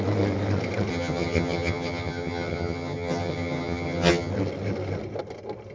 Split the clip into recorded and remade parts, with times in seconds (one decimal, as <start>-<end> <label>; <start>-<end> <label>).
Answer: 0.0-0.9 recorded; 0.9-4.3 remade; 4.3-5.7 recorded